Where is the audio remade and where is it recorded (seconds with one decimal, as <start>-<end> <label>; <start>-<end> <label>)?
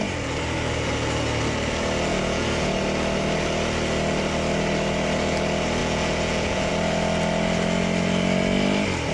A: 0.0-2.1 recorded; 2.1-2.7 remade; 2.7-5.8 recorded; 5.8-6.7 remade; 6.7-9.1 recorded